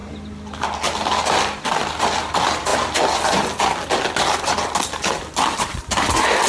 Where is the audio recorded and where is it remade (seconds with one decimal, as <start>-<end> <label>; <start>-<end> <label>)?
0.0-6.5 recorded